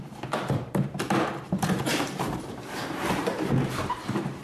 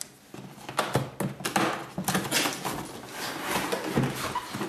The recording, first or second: second